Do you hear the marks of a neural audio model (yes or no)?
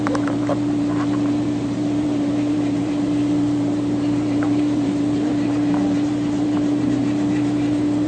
yes